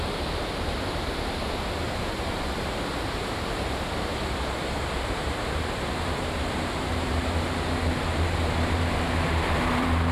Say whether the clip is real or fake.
fake